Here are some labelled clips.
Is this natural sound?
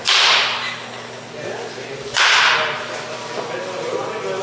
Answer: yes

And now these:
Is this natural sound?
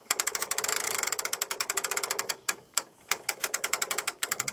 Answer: no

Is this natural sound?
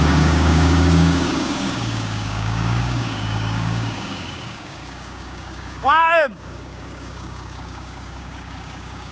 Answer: no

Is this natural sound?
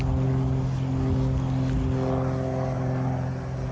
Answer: yes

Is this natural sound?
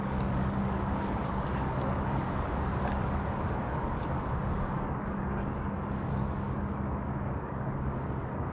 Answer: no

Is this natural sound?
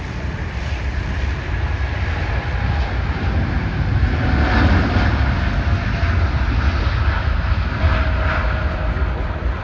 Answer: yes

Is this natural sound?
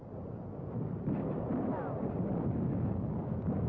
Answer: yes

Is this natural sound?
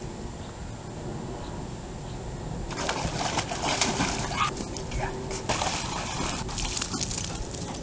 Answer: yes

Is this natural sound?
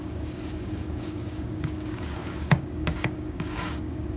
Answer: no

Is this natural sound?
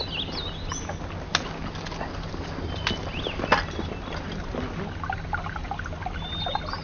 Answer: yes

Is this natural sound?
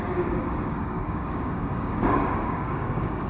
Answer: no